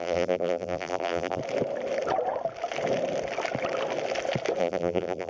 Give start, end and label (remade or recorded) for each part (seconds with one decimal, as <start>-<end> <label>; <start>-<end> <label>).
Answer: 0.0-1.4 remade; 1.4-4.6 recorded; 4.6-5.3 remade